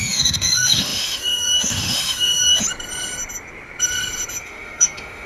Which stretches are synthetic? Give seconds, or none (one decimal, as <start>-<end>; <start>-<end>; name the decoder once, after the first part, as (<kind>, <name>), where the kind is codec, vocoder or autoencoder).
0.0-2.6 (autoencoder, DAC-VAE); 4.4-5.3